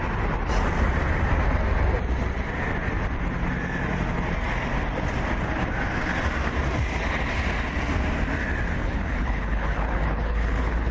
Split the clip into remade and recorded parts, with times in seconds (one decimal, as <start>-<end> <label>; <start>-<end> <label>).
0.0-8.8 recorded; 8.8-10.9 remade